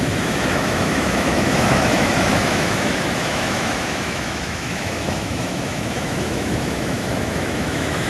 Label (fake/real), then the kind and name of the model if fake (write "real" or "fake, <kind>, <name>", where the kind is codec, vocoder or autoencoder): fake, autoencoder, DAC-VAE